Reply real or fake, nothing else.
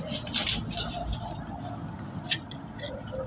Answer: real